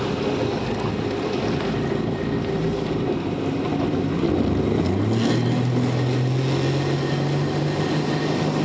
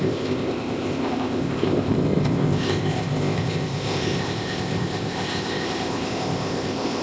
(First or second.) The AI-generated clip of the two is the second